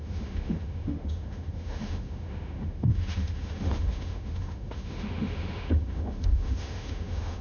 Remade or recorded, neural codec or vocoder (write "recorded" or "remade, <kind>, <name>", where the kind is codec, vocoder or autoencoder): remade, autoencoder, DAC-VAE